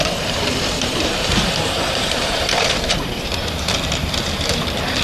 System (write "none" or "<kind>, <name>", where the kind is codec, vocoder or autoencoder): vocoder, BigVGAN v2